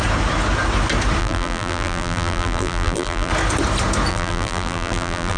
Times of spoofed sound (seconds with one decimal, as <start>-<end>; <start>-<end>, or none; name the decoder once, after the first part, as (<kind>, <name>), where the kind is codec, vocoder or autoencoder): 1.2-3.3 (vocoder, BigVGAN v2); 4.1-5.4